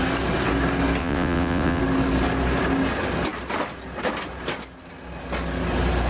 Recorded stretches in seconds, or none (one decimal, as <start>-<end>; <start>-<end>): 0.0-1.0; 1.8-6.1